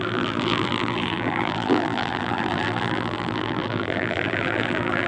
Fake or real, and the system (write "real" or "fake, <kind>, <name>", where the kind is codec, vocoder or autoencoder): fake, vocoder, BigVGAN v2